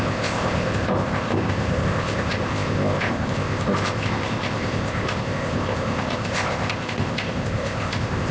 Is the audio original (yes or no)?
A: no